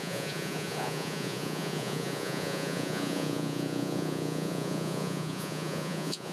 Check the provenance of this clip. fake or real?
fake